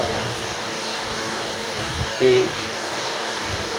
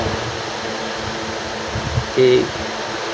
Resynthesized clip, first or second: first